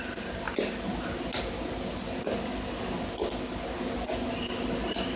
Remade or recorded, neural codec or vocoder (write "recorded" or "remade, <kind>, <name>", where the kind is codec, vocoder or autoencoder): recorded